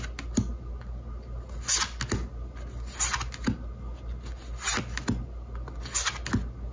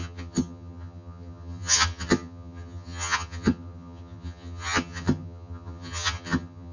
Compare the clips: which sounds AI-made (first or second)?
second